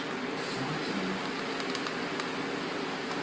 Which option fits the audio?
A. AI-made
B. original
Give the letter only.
B